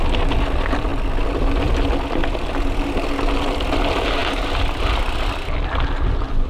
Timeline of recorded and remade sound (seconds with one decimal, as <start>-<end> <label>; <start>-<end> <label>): 0.0-6.5 recorded